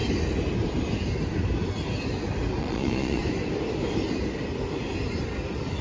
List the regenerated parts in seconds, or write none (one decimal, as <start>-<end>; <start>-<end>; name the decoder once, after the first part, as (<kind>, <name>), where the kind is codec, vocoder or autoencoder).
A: 2.6-3.2 (vocoder, Vocos)